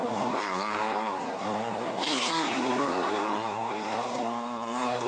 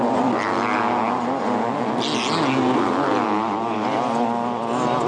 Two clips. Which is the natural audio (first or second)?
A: second